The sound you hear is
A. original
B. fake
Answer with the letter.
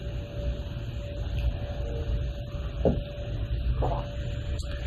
A